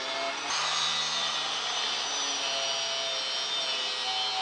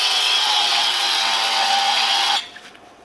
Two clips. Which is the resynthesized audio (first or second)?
second